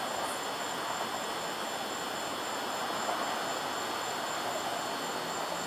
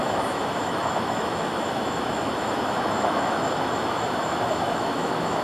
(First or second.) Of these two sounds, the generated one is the second